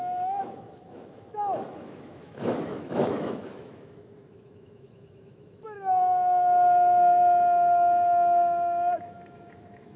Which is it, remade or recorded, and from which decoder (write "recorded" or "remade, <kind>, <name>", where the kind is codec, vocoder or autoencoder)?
remade, autoencoder, DAC-VAE